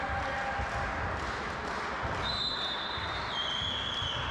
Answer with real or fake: real